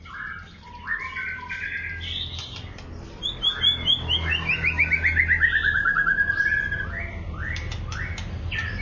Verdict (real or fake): real